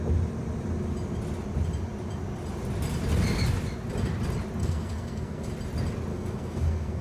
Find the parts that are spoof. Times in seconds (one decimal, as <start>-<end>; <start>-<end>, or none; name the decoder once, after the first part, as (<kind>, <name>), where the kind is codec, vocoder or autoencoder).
4.6-5.5 (codec, SNAC); 6.1-7.0